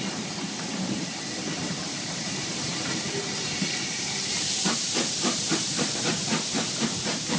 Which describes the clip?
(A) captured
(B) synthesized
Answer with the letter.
B